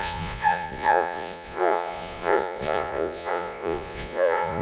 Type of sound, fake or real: fake